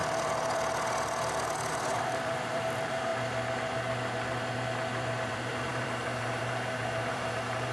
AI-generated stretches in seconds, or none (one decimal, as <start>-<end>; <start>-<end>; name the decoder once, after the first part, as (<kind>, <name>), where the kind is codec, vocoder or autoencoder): 1.7-3.1 (vocoder, BigVGAN v2); 5.3-7.7

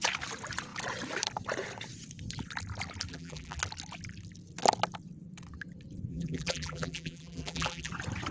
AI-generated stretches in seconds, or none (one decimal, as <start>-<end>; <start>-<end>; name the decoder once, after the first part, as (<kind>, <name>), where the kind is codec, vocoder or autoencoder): 3.1-3.6 (vocoder, BigVGAN v2); 6.1-7.9

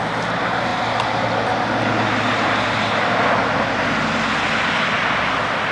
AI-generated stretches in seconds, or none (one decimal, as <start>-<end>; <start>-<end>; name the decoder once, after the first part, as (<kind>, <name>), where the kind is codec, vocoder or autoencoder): none